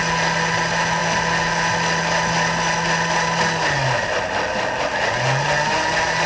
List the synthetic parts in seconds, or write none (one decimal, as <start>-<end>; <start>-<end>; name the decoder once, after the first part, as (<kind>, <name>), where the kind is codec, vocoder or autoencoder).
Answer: none